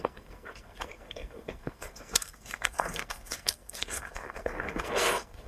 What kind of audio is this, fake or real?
fake